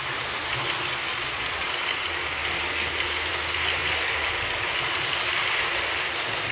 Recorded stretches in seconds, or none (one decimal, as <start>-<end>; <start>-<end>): 0.0-1.1; 1.7-6.5

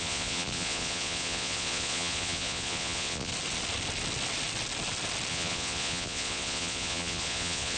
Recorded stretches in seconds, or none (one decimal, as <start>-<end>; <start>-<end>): 3.3-5.3

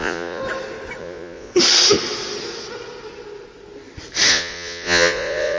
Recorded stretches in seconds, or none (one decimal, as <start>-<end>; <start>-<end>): 0.4-1.0; 1.5-4.3

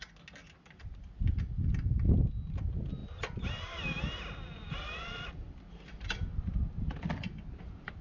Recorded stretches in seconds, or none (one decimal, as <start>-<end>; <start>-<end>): 0.0-8.0

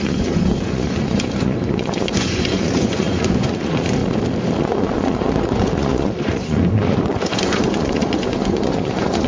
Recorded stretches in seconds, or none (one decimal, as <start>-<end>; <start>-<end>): 4.0-4.6

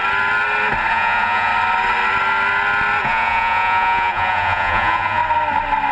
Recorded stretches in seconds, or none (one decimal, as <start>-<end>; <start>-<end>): 0.0-0.9; 1.5-3.0; 5.2-5.9